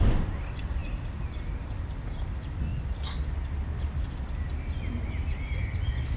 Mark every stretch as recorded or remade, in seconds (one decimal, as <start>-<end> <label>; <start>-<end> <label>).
0.0-6.2 recorded